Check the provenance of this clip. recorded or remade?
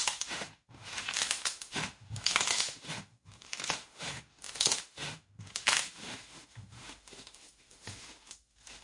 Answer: remade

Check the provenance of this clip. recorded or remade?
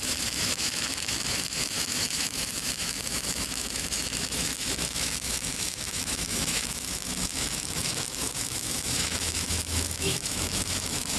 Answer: remade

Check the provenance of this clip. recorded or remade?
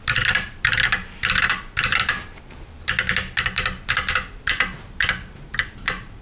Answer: recorded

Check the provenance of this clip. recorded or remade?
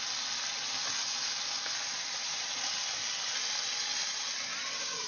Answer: recorded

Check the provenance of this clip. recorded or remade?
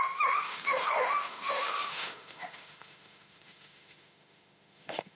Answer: remade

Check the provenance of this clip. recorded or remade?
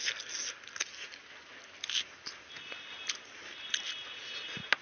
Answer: recorded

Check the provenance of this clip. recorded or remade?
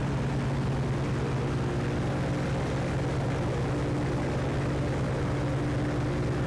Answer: recorded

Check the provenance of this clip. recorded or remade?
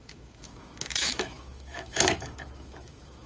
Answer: remade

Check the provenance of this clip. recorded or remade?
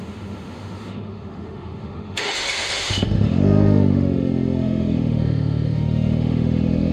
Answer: remade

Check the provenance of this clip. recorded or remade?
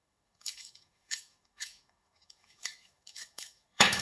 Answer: remade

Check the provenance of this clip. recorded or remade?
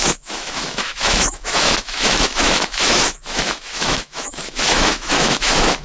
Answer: remade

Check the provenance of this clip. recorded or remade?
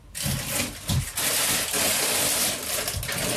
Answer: recorded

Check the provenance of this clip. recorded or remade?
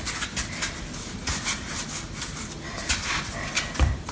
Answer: recorded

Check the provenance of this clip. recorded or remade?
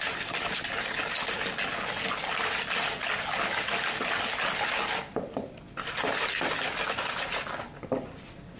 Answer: recorded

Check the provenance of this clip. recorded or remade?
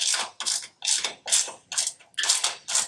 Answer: recorded